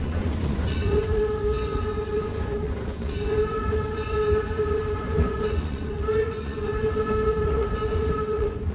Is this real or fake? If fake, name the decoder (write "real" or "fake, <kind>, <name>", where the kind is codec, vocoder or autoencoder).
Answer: fake, vocoder, Vocos